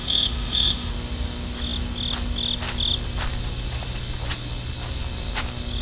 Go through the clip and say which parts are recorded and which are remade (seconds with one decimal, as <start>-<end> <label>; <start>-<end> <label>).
0.0-0.9 remade; 0.9-5.8 recorded